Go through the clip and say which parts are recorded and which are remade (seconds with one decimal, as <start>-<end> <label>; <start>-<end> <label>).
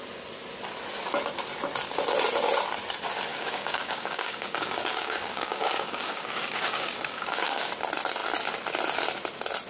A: 0.0-3.3 recorded; 3.3-7.7 remade; 7.7-9.7 recorded